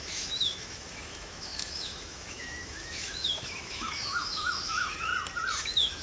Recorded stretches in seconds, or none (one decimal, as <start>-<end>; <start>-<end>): 5.1-5.6